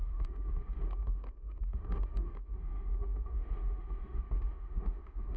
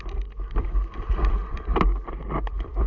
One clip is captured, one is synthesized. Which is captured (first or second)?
second